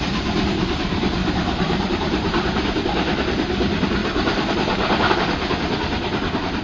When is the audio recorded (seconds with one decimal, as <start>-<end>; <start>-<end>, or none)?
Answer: 0.0-1.2; 2.8-4.0; 5.1-6.6